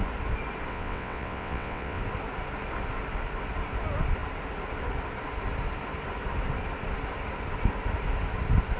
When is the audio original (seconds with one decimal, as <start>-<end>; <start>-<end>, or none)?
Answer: 0.0-0.7; 2.0-8.8